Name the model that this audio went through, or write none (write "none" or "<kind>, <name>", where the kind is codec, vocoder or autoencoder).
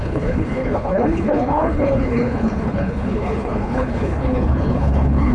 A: codec, HILCodec